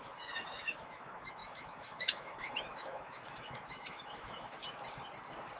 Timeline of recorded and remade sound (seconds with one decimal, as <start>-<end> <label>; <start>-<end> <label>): 0.0-4.6 remade; 4.6-5.6 recorded

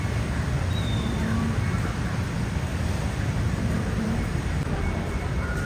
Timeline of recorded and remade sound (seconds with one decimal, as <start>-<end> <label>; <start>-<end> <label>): 0.0-2.7 recorded; 2.7-5.7 remade

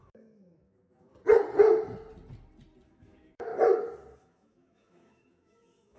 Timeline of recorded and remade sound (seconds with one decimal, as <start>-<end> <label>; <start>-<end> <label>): 0.0-1.1 remade; 1.1-2.9 recorded; 2.9-3.5 remade; 3.5-4.2 recorded; 4.2-6.0 remade

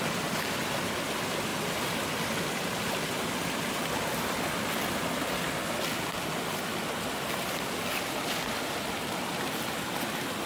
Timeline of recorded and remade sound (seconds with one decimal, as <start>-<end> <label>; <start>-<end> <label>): 0.0-10.5 recorded

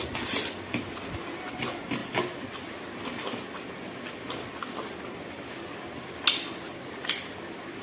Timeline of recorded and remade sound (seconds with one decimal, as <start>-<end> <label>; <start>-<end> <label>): 0.0-7.8 recorded